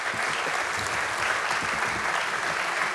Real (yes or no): yes